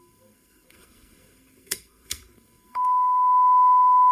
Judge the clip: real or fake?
fake